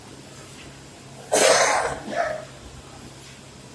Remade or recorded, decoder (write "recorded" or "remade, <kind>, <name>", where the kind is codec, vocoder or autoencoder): recorded